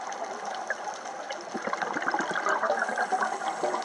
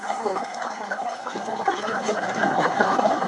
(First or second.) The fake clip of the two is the second